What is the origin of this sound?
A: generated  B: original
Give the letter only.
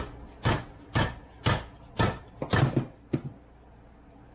B